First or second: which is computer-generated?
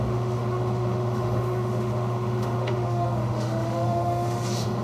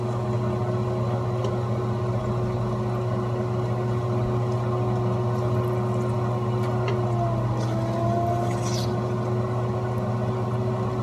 first